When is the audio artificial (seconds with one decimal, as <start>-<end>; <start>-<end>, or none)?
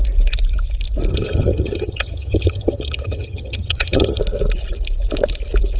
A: 1.1-4.2